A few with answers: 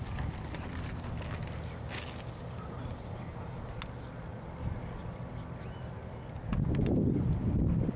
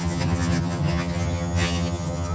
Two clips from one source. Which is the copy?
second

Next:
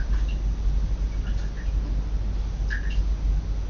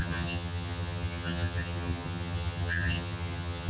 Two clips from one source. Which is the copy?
second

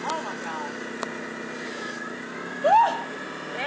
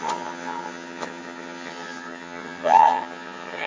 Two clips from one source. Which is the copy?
second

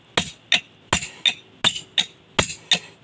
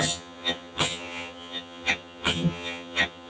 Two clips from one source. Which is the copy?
second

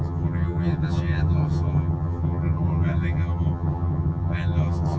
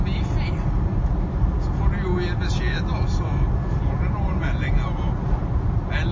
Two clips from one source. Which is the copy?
first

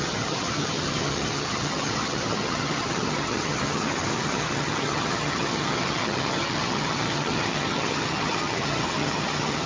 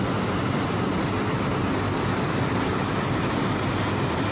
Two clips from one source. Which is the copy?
first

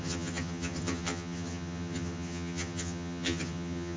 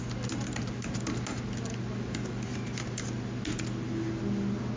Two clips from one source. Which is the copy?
first